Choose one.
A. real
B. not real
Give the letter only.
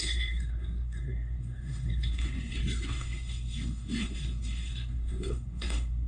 B